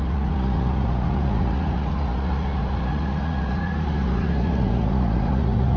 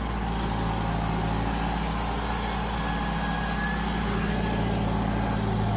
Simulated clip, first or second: first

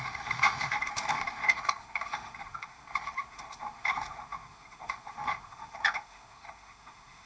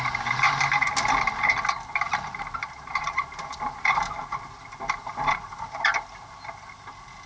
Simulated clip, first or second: first